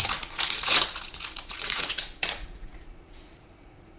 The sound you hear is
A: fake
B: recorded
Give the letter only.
A